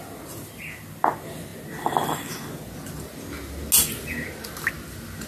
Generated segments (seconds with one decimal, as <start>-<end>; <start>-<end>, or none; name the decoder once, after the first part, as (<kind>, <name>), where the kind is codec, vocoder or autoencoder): none